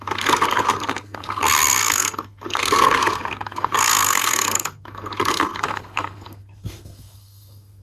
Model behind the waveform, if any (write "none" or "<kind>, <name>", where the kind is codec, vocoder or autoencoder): codec, SNAC